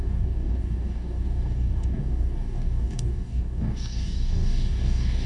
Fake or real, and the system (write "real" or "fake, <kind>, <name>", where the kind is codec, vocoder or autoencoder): fake, codec, DAC